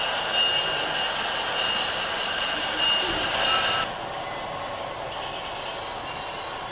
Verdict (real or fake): real